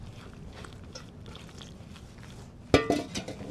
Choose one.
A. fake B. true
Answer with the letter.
B